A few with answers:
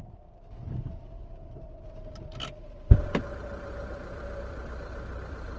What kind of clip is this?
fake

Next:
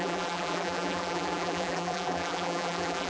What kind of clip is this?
fake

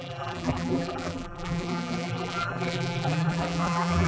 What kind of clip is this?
fake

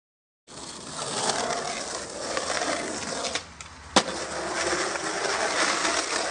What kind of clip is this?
real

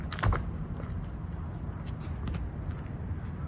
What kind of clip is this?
real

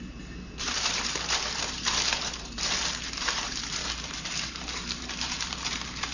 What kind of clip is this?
fake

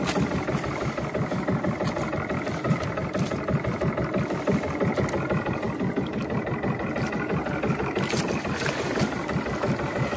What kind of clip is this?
real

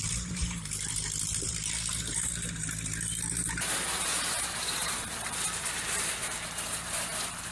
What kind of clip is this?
fake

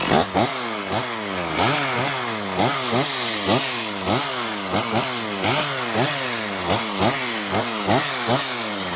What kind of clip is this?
real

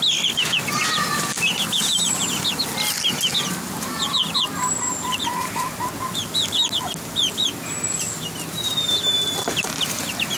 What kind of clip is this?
real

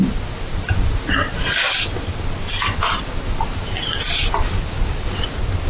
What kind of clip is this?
real